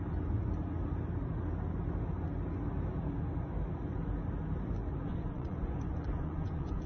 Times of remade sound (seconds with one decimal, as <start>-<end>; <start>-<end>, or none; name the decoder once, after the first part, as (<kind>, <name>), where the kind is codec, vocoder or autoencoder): 5.1-6.9 (vocoder, Vocos)